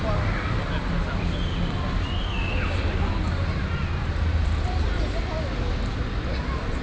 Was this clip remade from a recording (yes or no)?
no